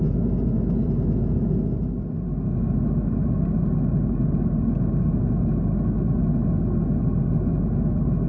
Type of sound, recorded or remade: recorded